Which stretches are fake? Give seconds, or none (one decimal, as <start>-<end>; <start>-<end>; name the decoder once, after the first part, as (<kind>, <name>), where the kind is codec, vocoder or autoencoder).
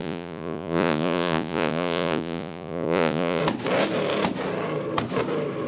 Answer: 0.0-3.4 (vocoder, Vocos)